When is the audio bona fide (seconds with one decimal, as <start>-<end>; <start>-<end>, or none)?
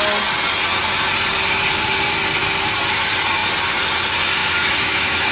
0.0-4.4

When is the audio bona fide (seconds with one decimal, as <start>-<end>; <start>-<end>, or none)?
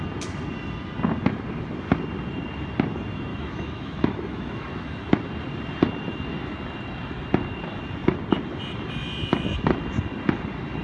0.0-3.3; 5.1-10.8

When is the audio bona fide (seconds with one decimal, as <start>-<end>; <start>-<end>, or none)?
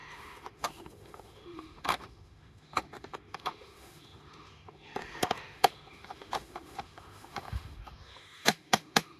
none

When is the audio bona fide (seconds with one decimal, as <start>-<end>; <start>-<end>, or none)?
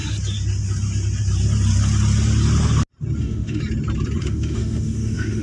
0.0-3.2; 3.6-4.2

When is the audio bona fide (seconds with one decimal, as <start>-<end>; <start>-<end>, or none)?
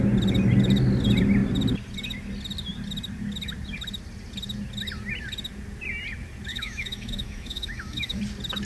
0.0-6.5; 8.2-8.7